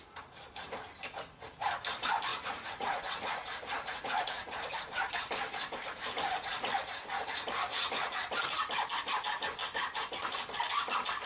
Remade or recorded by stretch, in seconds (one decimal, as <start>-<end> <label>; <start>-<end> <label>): 0.0-2.3 recorded; 2.3-4.8 remade; 4.8-7.7 recorded; 7.7-8.4 remade; 8.4-11.3 recorded

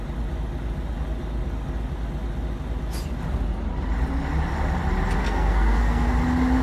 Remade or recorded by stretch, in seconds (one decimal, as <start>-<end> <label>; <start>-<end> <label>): 0.0-5.2 recorded; 5.2-6.1 remade; 6.1-6.6 recorded

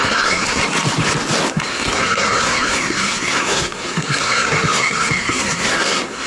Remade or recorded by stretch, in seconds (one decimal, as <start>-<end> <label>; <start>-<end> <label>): 0.0-0.6 remade; 0.6-1.5 recorded; 1.5-6.3 remade